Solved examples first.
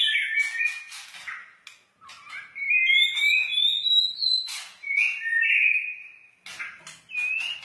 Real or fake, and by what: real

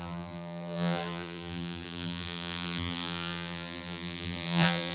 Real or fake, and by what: fake, vocoder, BigVGAN v2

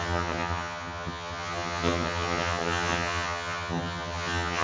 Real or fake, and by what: fake, vocoder, HiFi-GAN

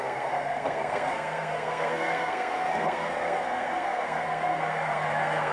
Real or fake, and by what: fake, codec, SNAC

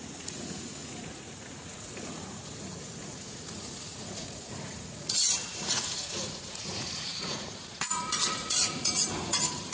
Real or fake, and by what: fake, vocoder, Vocos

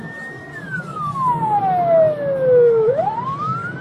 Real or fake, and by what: real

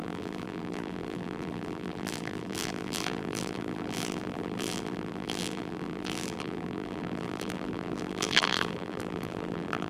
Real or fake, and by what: fake, vocoder, BigVGAN v2